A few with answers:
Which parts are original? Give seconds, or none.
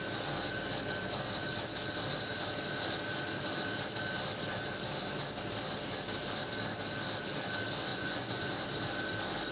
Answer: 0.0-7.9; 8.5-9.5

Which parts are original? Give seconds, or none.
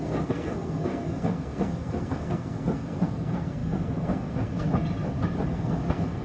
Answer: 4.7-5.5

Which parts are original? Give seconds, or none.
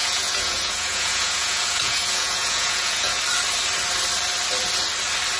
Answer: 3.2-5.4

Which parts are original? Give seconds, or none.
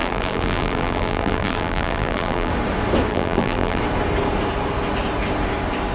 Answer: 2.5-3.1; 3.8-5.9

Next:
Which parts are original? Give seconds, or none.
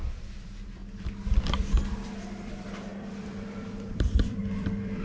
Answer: 0.8-1.4